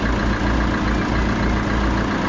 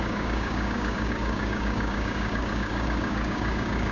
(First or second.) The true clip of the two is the first